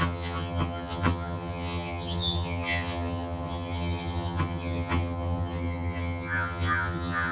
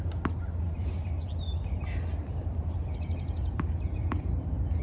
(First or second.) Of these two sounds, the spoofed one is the first